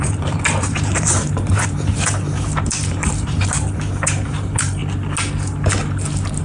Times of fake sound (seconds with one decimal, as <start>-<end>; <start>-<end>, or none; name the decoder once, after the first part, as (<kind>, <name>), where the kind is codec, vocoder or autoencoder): 0.0-4.8 (vocoder, BigVGAN v2)